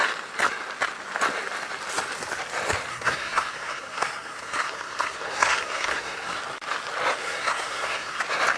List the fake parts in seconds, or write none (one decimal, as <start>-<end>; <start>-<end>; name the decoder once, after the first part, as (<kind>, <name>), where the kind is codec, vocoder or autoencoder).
2.9-6.4 (codec, SNAC); 7.2-8.2

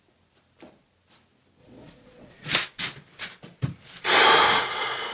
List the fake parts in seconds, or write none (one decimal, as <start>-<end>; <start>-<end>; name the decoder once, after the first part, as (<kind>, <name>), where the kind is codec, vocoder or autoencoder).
1.6-2.5 (vocoder, Vocos)

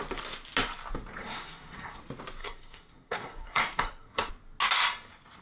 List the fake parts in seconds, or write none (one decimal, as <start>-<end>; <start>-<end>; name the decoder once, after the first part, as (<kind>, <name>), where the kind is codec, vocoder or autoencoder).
1.2-2.0 (codec, SNAC); 2.4-4.3

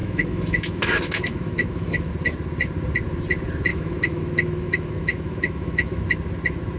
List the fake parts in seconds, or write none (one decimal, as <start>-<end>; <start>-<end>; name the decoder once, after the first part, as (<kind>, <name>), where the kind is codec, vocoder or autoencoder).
0.0-2.1 (autoencoder, DAC-VAE); 3.7-6.0